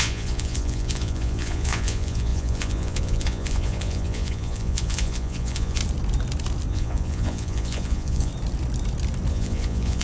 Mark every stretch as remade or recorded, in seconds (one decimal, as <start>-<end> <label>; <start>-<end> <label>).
0.0-5.8 remade; 5.8-6.7 recorded; 6.7-8.3 remade; 8.3-9.3 recorded; 9.3-10.0 remade